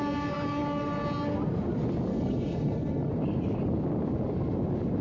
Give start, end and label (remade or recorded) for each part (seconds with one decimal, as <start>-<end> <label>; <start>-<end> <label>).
0.0-2.1 recorded; 2.1-3.1 remade; 3.1-5.0 recorded